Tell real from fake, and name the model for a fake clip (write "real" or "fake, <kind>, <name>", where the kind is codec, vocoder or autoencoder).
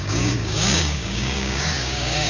fake, codec, DAC